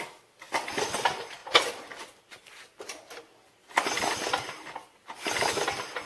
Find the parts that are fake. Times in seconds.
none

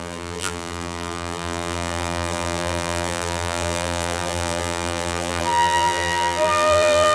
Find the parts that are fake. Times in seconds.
0.0-7.1 (vocoder, BigVGAN v2)

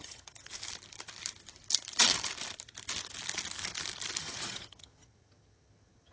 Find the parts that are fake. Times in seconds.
0.0-0.5 (vocoder, HiFi-GAN); 4.2-6.1

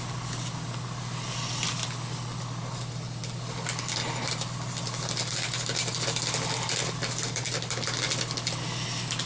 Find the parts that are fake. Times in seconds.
none